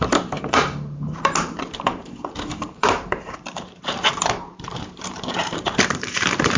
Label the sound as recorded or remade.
remade